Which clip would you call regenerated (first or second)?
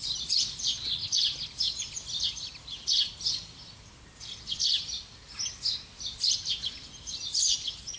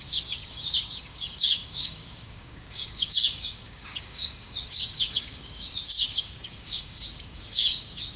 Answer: second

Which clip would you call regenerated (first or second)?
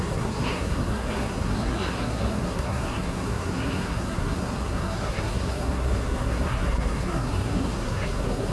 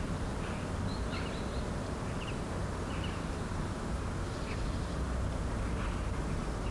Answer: first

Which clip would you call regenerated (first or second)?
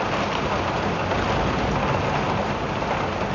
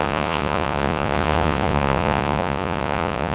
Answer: second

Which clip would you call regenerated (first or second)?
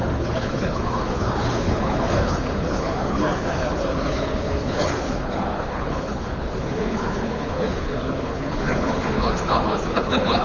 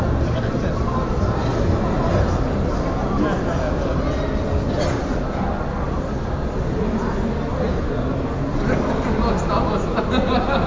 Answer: first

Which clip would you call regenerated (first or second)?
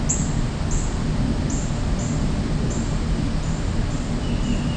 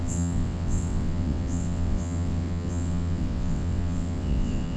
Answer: second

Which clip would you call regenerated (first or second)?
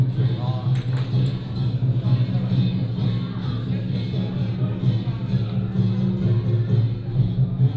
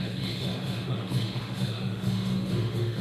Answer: second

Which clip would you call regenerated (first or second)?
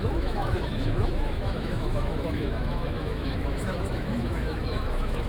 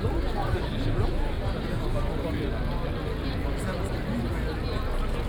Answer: first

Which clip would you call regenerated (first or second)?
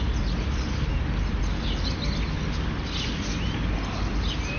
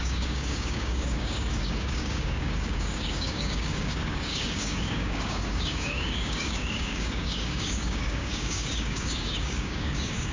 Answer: second